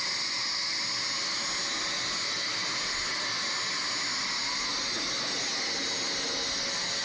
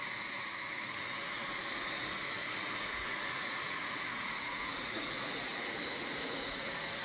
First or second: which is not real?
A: second